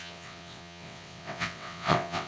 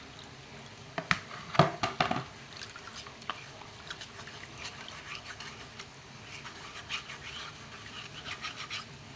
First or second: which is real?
second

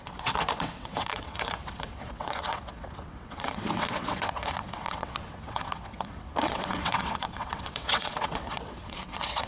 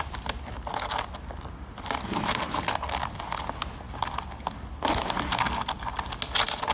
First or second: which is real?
second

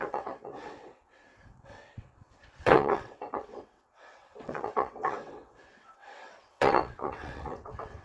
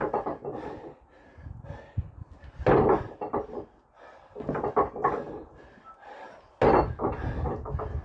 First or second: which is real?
second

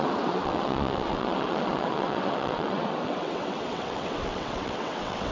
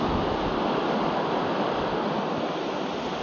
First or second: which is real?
second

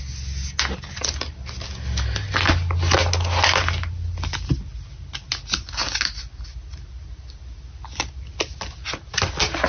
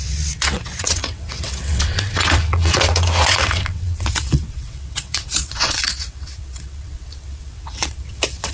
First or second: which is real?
first